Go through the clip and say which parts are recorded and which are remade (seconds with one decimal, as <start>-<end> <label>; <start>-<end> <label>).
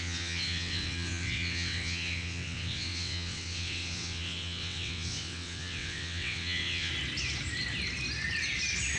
0.0-6.9 remade; 6.9-9.0 recorded